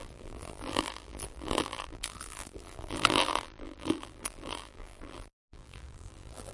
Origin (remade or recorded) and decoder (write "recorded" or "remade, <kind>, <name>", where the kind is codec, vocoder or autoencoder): remade, vocoder, BigVGAN v2